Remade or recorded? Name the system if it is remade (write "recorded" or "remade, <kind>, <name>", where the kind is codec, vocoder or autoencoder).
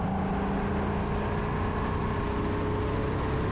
recorded